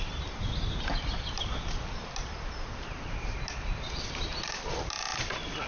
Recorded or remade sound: recorded